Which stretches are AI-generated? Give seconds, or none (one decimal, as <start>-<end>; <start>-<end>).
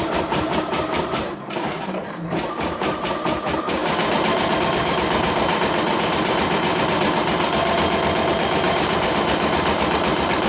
0.0-3.8; 4.6-7.2; 8.3-10.5